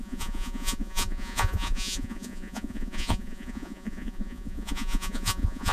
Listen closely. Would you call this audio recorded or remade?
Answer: remade